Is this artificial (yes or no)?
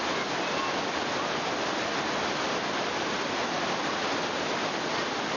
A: no